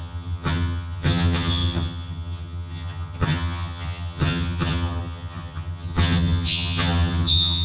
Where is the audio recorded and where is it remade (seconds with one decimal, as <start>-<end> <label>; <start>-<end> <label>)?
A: 0.0-7.6 remade